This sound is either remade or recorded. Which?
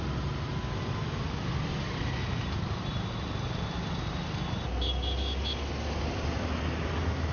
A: recorded